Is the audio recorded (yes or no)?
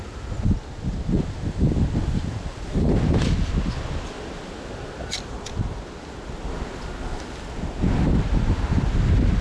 yes